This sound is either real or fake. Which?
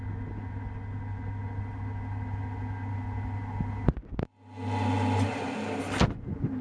real